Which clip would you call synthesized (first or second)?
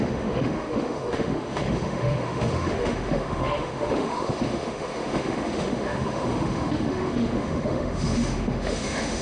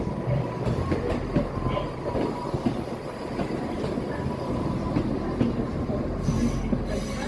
first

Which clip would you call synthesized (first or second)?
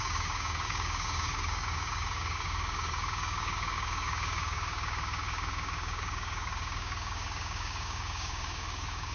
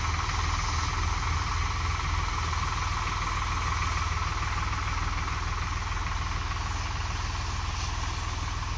first